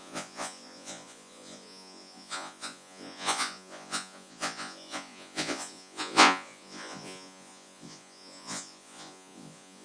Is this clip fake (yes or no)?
yes